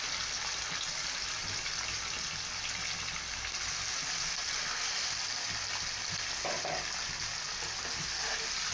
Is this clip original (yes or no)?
yes